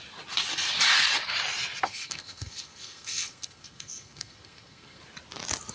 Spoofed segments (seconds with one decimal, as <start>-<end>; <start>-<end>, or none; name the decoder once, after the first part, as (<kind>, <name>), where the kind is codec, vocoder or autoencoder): 1.9-5.0 (codec, SNAC)